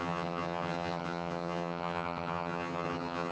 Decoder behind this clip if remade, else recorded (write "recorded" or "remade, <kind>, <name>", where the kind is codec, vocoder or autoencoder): remade, vocoder, HiFi-GAN